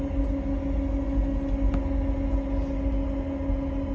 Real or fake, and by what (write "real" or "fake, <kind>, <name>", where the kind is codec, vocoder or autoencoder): real